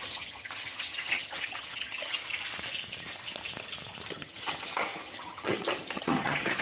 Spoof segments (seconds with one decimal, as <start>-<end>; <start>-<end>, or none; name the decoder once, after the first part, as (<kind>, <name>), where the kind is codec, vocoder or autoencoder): 0.0-2.2 (vocoder, HiFi-GAN); 4.1-6.6